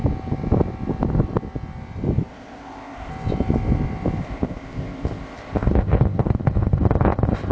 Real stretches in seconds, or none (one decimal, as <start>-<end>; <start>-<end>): 0.0-2.3; 3.1-4.2

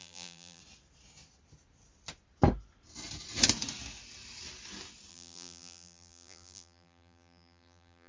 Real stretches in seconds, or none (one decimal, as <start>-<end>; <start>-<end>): 0.6-5.1

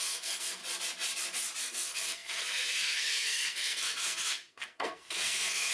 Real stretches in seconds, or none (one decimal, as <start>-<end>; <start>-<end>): 0.6-1.6

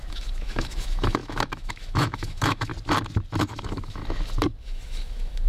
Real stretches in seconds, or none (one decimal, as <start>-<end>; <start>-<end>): 2.7-3.4; 4.0-4.6

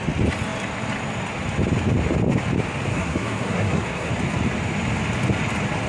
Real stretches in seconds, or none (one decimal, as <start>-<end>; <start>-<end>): 0.0-2.9; 4.1-5.9